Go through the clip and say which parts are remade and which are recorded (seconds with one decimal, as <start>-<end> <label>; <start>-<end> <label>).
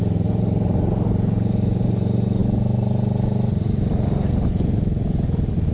0.0-5.7 recorded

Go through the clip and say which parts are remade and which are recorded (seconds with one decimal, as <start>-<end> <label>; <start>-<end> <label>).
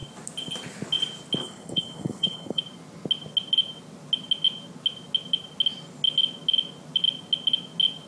0.0-1.4 recorded; 1.4-2.6 remade; 2.6-8.1 recorded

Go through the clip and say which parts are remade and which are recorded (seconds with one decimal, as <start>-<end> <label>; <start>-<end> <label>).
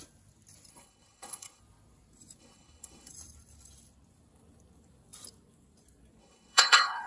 0.0-0.7 recorded; 0.7-1.6 remade; 1.6-2.4 recorded; 2.4-3.1 remade; 3.1-6.2 recorded; 6.2-7.1 remade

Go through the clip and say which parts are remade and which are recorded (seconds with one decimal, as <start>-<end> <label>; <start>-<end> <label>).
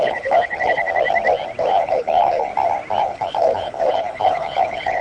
0.0-0.8 remade; 0.8-1.6 recorded; 1.6-2.5 remade; 2.5-3.0 recorded; 3.0-5.0 remade